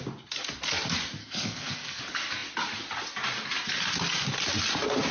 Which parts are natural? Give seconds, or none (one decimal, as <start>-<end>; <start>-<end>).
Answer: 0.0-1.2; 2.0-5.1